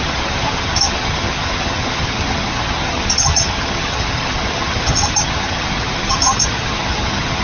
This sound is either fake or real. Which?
fake